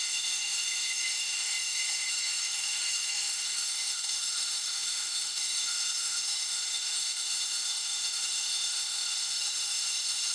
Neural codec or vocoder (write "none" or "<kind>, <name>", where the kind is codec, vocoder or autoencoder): autoencoder, DAC-VAE